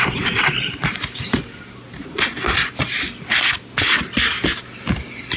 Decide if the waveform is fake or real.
real